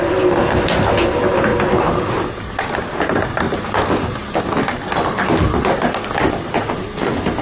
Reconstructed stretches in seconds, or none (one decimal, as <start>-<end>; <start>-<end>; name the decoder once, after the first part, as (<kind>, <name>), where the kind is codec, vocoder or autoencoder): none

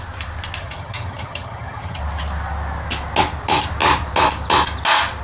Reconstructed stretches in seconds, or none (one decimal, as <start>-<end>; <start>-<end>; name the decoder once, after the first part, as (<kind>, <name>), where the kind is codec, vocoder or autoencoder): 0.6-2.0 (vocoder, HiFi-GAN)

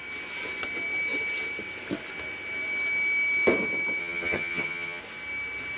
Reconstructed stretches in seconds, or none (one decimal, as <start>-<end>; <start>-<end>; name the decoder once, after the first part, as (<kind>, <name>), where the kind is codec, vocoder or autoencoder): 4.0-5.0 (vocoder, HiFi-GAN)

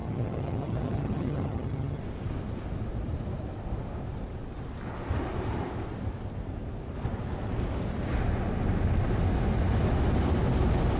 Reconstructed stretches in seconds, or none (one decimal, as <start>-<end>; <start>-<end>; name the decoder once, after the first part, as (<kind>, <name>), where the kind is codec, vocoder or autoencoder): 0.0-2.0 (vocoder, HiFi-GAN)

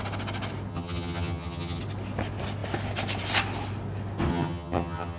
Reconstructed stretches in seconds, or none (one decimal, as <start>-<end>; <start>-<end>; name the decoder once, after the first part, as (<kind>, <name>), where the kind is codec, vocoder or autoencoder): 0.7-1.8 (vocoder, HiFi-GAN); 4.3-5.2

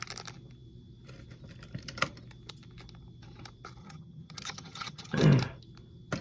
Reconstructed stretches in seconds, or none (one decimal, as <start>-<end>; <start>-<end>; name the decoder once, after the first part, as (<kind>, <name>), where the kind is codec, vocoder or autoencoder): 3.8-5.2 (vocoder, HiFi-GAN)

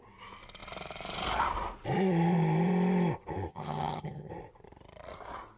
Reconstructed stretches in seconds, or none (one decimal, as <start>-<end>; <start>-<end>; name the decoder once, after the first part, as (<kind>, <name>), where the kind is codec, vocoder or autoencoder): 3.5-4.3 (vocoder, HiFi-GAN)

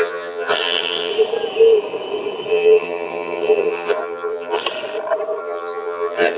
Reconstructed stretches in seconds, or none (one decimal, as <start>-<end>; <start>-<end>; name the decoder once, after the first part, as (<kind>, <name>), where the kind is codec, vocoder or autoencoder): 0.0-1.1 (vocoder, HiFi-GAN); 2.5-4.6; 5.4-6.4